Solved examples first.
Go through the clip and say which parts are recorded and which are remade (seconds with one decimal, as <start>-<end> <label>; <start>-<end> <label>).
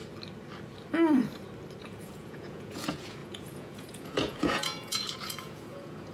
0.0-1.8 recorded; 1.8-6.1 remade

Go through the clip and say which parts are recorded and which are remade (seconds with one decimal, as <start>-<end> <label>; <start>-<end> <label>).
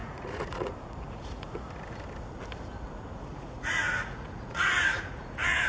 0.0-1.7 remade; 1.7-3.3 recorded; 3.3-5.7 remade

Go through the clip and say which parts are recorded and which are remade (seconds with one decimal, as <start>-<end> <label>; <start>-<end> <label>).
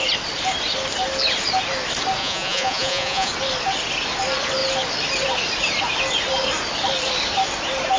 0.0-2.2 recorded; 2.2-3.3 remade; 3.3-8.0 recorded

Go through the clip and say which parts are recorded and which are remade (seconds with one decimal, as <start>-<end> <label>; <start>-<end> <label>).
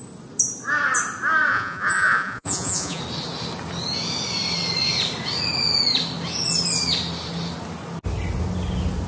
0.0-1.5 recorded; 1.5-3.0 remade; 3.0-9.1 recorded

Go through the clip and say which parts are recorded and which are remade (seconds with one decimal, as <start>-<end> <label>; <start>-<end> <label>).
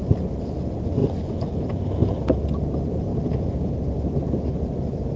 0.0-5.2 recorded